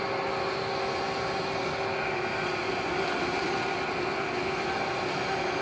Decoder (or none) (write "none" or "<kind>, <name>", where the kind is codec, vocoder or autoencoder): none